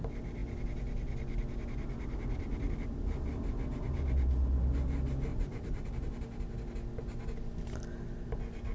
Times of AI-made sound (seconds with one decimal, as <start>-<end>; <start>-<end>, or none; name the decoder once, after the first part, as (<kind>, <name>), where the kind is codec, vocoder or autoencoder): 5.3-5.9 (vocoder, Vocos)